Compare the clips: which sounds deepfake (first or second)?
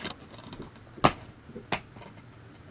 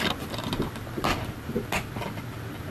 second